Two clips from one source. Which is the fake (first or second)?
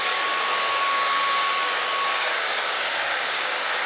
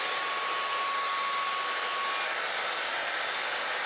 first